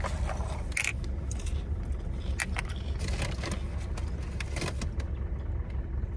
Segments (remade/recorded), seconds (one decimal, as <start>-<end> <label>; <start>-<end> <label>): 0.0-6.2 recorded